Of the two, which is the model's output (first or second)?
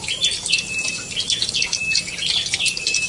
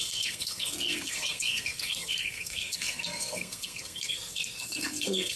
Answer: second